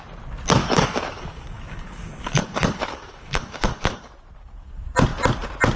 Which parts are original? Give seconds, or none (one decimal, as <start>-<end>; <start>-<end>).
0.0-0.6; 4.1-5.8